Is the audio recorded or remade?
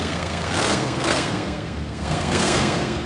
remade